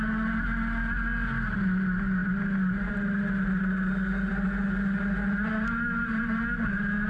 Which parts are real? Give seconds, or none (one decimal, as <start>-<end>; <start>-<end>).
0.0-7.1